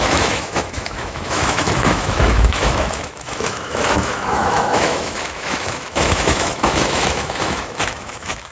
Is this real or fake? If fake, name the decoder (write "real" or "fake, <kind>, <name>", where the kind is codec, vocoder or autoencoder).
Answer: fake, autoencoder, DAC-VAE